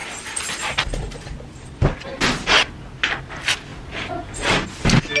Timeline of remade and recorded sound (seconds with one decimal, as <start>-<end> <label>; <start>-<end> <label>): 0.0-5.2 recorded